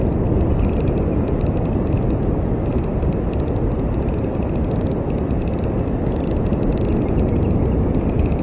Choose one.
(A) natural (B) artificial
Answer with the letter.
A